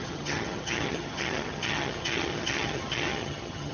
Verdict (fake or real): fake